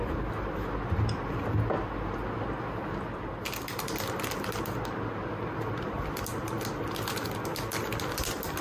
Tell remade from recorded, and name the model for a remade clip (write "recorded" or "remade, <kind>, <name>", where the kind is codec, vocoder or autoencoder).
recorded